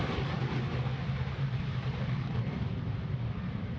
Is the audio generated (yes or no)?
yes